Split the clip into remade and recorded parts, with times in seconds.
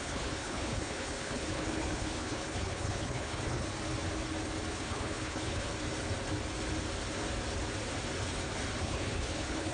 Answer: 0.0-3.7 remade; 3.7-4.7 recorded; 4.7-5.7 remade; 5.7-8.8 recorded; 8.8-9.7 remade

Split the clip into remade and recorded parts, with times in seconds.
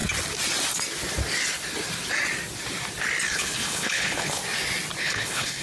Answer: 0.0-3.3 recorded; 3.3-4.4 remade; 4.4-5.0 recorded; 5.0-5.6 remade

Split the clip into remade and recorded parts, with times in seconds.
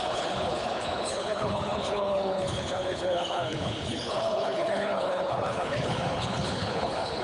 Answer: 0.0-7.2 remade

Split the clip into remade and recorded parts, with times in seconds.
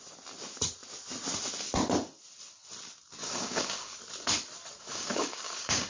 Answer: 0.0-3.2 recorded; 3.2-4.0 remade; 4.0-4.9 recorded; 4.9-5.9 remade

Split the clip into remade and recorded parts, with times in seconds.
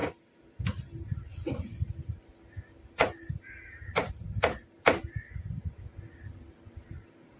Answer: 0.0-7.4 recorded